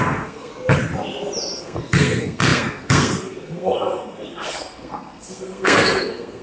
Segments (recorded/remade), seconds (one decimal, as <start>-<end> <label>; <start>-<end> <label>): 0.0-0.5 remade; 0.5-1.6 recorded; 1.6-6.4 remade